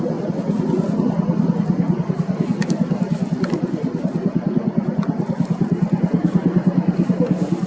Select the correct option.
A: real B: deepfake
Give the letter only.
A